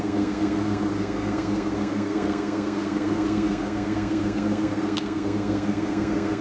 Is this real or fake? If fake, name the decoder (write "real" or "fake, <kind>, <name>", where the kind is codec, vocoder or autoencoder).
fake, codec, SNAC